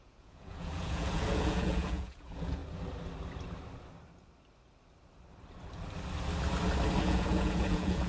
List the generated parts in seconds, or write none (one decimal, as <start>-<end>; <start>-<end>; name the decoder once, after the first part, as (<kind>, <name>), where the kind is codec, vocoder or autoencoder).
0.0-2.6 (vocoder, Vocos); 7.0-8.1